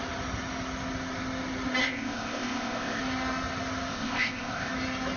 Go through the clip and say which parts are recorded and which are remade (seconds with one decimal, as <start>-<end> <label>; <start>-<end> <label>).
0.0-1.8 recorded; 1.8-3.0 remade; 3.0-3.9 recorded; 3.9-4.7 remade; 4.7-5.2 recorded